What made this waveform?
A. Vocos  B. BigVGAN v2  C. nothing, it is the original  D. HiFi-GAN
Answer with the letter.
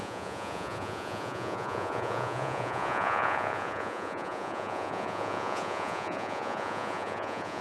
A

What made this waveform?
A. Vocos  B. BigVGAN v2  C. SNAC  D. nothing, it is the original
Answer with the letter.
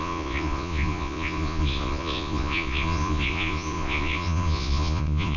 A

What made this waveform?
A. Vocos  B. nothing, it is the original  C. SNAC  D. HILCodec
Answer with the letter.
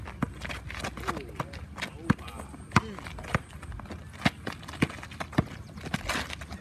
B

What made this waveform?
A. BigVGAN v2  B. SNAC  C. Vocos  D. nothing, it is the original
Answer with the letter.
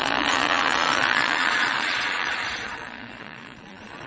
C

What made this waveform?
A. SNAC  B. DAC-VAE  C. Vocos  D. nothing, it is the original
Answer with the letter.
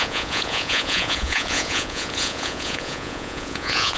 C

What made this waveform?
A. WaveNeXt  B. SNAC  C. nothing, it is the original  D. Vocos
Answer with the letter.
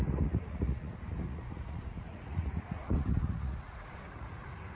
D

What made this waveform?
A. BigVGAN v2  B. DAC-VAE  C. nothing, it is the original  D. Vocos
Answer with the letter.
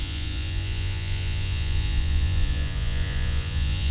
D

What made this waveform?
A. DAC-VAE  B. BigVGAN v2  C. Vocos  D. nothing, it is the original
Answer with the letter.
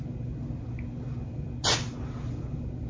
D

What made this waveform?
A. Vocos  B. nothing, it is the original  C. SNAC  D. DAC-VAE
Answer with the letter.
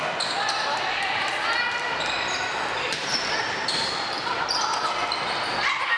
B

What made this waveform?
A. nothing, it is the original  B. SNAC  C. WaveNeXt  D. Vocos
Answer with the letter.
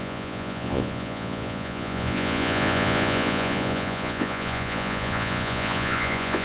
D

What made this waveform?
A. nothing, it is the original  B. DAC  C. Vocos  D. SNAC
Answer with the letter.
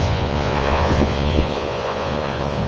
C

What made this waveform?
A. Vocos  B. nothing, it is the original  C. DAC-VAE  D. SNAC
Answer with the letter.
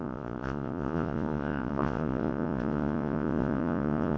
A